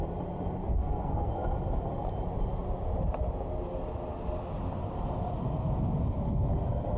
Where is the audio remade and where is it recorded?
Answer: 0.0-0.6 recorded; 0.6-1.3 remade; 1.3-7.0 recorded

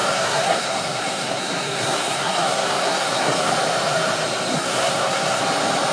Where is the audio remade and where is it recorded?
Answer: 0.0-3.5 remade; 3.5-4.5 recorded; 4.5-5.4 remade; 5.4-5.9 recorded

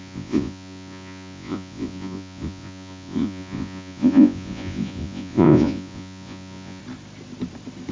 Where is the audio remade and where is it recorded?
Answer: 0.0-6.8 remade; 6.8-7.9 recorded

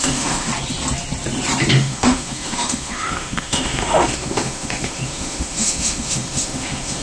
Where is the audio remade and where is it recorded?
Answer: 0.0-0.5 remade; 0.5-1.7 recorded; 1.7-7.0 remade